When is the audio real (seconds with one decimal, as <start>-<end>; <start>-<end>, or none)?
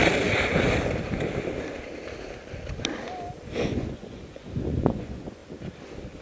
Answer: 0.0-3.6; 5.4-6.2